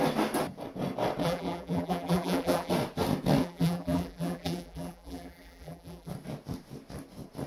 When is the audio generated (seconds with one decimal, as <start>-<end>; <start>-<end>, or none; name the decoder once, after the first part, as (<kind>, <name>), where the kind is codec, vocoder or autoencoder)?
1.2-2.7 (vocoder, BigVGAN v2); 3.4-6.1